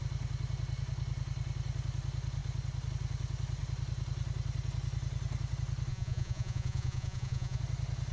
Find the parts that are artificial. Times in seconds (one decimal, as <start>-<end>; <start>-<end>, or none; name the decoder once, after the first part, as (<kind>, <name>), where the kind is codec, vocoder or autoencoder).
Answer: 5.9-7.6 (vocoder, Vocos)